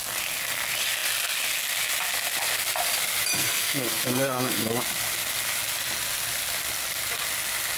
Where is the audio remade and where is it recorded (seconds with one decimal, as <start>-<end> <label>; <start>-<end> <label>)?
0.0-3.4 recorded; 3.4-4.8 remade; 4.8-7.8 recorded